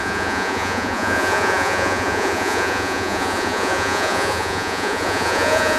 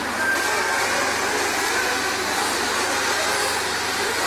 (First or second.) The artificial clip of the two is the first